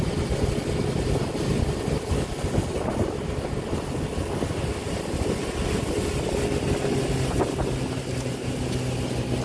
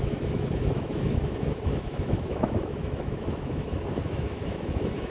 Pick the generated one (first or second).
second